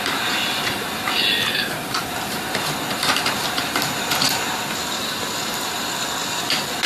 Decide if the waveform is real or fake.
real